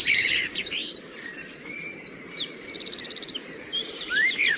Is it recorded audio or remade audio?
remade